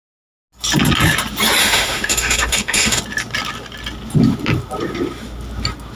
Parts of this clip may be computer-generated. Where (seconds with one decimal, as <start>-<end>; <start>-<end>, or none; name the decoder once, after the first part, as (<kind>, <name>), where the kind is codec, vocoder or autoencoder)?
1.6-3.0 (autoencoder, DAC-VAE)